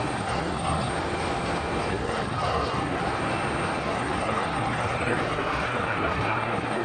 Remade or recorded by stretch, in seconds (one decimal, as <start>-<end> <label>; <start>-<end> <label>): 0.0-0.9 remade; 0.9-1.9 recorded; 1.9-3.0 remade; 3.0-3.8 recorded; 3.8-6.8 remade